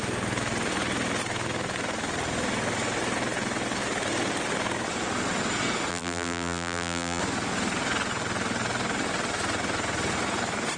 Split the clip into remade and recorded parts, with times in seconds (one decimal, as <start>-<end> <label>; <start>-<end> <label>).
0.0-5.9 recorded; 5.9-7.2 remade; 7.2-10.8 recorded